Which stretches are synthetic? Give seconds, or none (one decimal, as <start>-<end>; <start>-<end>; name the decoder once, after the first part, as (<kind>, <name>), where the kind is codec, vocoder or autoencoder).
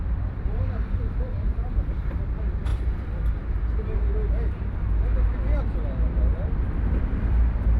0.0-2.7 (vocoder, BigVGAN v2); 6.2-7.8